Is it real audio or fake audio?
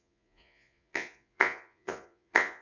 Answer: fake